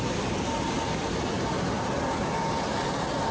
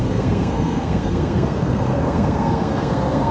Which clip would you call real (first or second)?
first